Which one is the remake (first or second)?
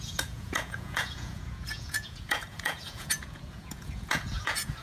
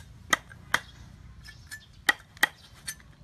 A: first